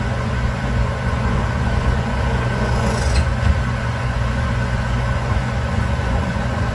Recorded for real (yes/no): no